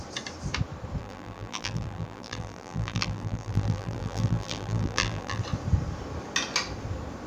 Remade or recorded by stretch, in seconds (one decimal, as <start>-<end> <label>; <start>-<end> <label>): 0.0-1.0 recorded; 1.0-5.4 remade; 5.4-7.3 recorded